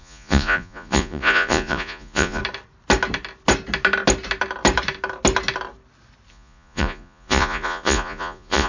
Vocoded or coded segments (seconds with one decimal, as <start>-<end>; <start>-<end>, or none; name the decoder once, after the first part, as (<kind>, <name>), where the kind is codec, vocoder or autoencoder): 0.0-2.4 (vocoder, Vocos); 6.3-8.7